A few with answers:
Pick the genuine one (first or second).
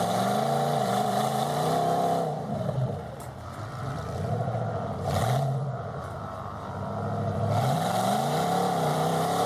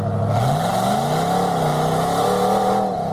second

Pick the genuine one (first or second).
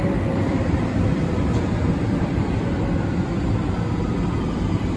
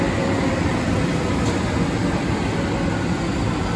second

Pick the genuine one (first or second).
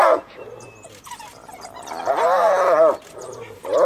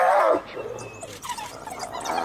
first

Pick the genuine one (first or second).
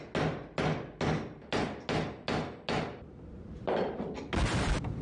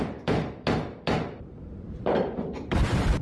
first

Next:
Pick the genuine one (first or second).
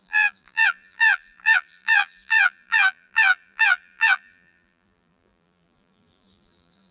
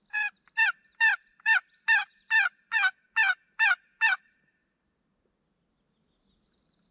second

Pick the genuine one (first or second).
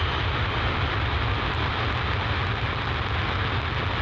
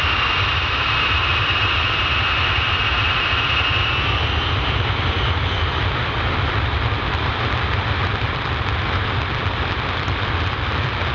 first